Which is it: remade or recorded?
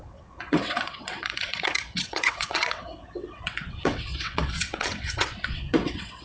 remade